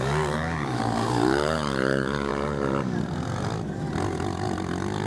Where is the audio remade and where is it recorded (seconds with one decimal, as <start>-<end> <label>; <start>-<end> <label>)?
0.0-2.3 remade; 2.3-5.1 recorded